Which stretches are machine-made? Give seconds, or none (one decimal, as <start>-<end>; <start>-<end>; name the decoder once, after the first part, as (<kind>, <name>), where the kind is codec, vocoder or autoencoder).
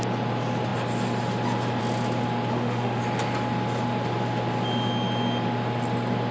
2.5-3.0 (autoencoder, DAC-VAE)